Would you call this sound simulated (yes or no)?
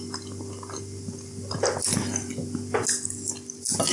no